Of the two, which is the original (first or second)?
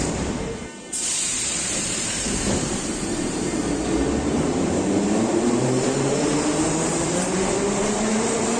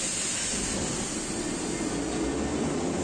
second